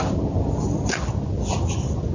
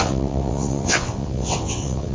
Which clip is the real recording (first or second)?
first